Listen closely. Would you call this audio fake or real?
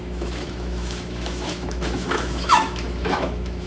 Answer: fake